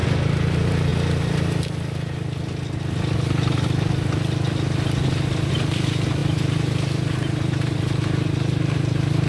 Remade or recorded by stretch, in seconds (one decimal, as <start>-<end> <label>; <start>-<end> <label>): 0.0-0.5 recorded; 0.5-0.9 remade; 0.9-5.5 recorded; 5.5-9.3 remade

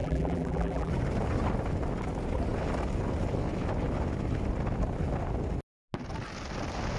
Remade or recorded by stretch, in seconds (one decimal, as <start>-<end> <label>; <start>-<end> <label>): 0.0-0.9 remade; 0.9-7.0 recorded

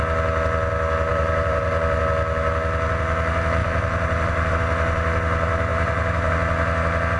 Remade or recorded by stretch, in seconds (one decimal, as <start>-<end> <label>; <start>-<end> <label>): 0.0-1.1 recorded; 1.1-2.0 remade; 2.0-3.6 recorded; 3.6-4.5 remade; 4.5-5.7 recorded; 5.7-6.3 remade; 6.3-7.2 recorded

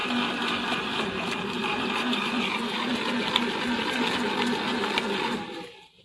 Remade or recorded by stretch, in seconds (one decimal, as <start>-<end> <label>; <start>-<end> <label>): 0.0-1.6 recorded; 1.6-2.9 remade; 2.9-6.0 recorded

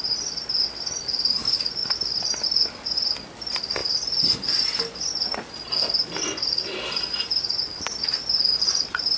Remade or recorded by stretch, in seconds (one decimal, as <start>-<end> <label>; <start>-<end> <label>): 0.0-9.2 recorded

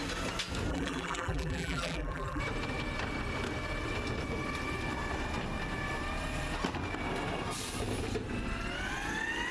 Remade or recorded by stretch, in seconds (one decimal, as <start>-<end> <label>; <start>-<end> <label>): 0.0-0.7 recorded; 0.7-2.4 remade; 2.4-9.5 recorded

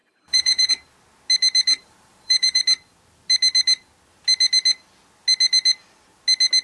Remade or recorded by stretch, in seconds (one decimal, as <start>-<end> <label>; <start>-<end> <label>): 0.0-0.7 remade; 0.7-1.8 recorded; 1.8-2.6 remade; 2.6-6.6 recorded